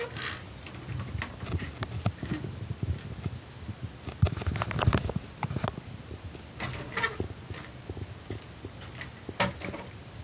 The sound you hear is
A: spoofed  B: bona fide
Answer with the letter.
B